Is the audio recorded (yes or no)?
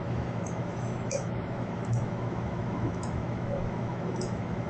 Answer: no